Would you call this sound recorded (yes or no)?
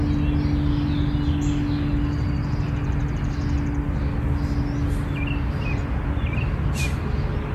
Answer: yes